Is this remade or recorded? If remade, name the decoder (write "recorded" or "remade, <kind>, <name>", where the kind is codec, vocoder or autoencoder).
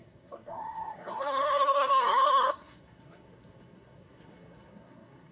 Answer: remade, codec, SNAC